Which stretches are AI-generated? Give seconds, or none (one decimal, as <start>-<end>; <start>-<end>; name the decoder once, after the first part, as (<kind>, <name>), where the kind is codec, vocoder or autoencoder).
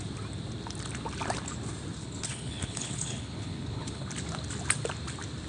2.0-4.1 (codec, HILCodec)